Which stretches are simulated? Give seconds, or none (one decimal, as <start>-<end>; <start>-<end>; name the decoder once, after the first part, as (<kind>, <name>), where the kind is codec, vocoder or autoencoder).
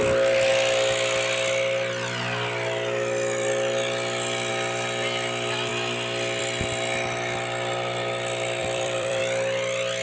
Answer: 8.6-9.2 (vocoder, BigVGAN v2)